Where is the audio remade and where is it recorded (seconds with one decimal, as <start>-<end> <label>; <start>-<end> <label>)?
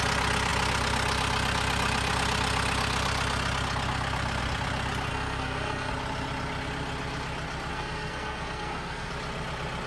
0.0-5.1 recorded; 5.1-5.9 remade; 5.9-7.7 recorded; 7.7-9.1 remade; 9.1-9.9 recorded